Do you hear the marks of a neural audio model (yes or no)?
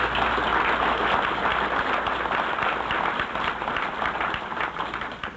no